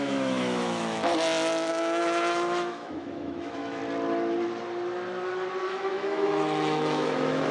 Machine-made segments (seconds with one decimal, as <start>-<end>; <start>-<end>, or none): 0.0-1.1; 1.7-3.8; 5.6-7.5